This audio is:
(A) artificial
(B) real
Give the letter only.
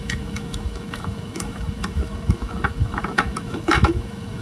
A